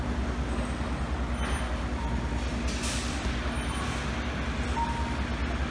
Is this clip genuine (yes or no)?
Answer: yes